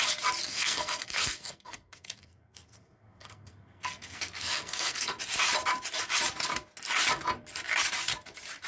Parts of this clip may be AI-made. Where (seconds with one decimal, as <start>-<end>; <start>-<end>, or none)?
0.5-5.2